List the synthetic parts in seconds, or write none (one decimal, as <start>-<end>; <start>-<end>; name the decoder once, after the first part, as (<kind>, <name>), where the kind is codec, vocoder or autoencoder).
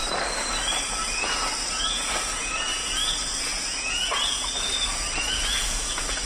1.8-6.3 (vocoder, Vocos)